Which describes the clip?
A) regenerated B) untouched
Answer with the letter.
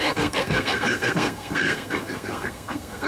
A